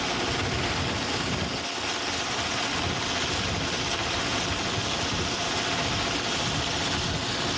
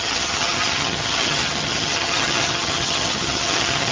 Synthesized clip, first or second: second